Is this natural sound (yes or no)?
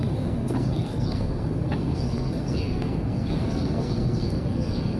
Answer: no